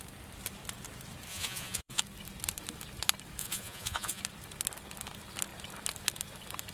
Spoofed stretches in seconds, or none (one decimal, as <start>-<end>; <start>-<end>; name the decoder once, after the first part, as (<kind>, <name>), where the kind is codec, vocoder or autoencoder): 1.3-2.0 (vocoder, Vocos); 3.4-4.2